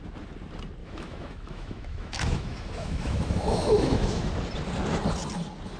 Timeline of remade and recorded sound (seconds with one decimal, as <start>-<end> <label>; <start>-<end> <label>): 0.0-0.8 recorded; 0.8-4.3 remade; 4.3-5.8 recorded